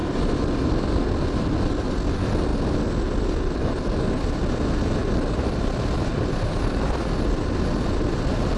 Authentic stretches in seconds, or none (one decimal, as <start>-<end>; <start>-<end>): 1.1-2.5; 4.1-5.0; 7.0-8.6